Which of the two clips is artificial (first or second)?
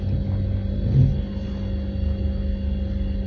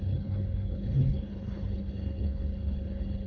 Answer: second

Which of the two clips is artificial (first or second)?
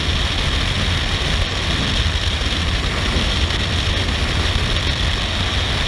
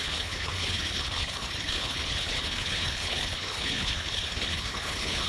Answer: second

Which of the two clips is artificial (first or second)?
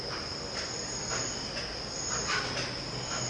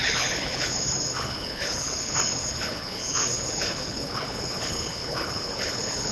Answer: second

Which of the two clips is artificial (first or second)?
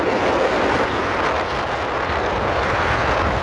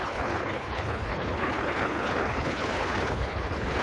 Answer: second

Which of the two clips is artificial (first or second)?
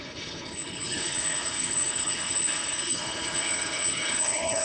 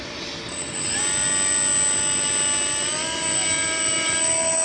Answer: first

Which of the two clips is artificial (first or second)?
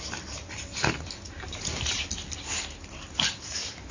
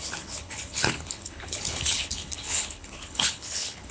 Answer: second